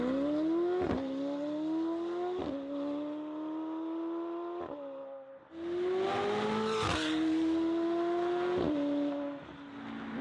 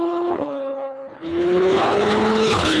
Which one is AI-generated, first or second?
second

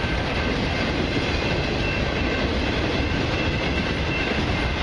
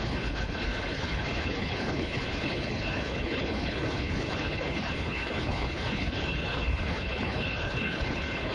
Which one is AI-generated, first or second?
second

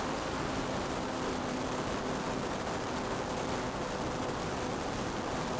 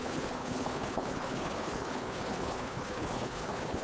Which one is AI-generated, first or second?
second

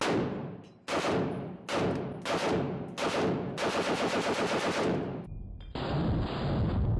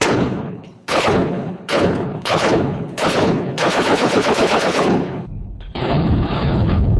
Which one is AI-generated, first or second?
second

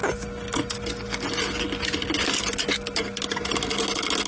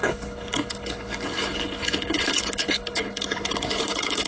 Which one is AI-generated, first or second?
second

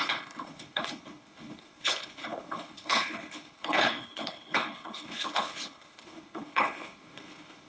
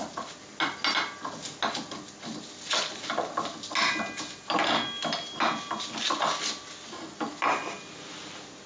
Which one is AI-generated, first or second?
first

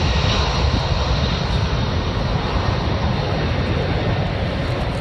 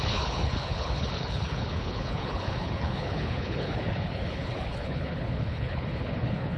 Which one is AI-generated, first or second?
second